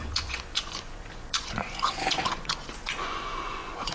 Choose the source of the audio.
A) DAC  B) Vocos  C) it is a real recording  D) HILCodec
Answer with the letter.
B